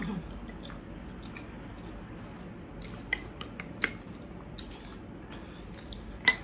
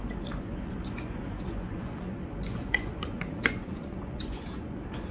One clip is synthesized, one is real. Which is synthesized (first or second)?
second